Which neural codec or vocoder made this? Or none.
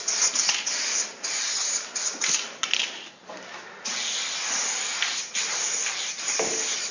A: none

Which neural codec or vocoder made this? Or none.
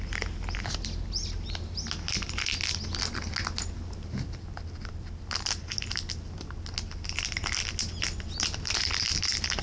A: none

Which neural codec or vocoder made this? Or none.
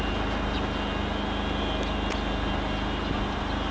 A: none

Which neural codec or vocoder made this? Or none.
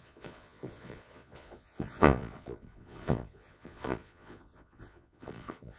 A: vocoder, Vocos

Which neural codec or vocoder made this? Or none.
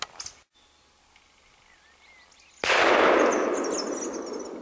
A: none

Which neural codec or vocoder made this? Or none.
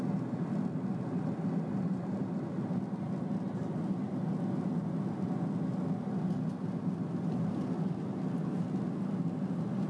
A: none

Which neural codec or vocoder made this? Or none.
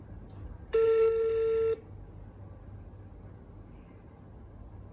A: none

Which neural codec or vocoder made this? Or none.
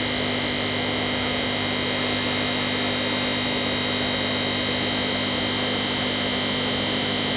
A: none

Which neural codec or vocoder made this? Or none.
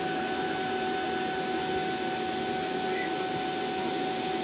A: none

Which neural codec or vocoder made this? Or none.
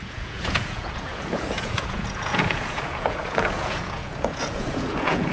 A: vocoder, Vocos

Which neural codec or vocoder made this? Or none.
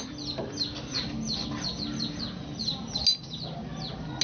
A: none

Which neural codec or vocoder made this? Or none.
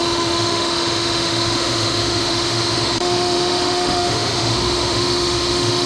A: autoencoder, DAC-VAE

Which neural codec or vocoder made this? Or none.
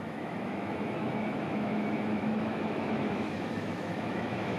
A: autoencoder, DAC-VAE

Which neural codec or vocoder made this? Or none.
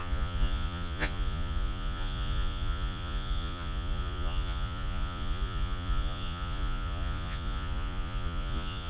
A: vocoder, Vocos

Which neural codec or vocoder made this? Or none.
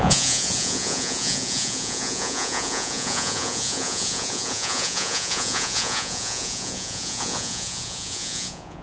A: vocoder, Vocos